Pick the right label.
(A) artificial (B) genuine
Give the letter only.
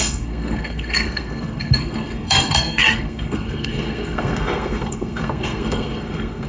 A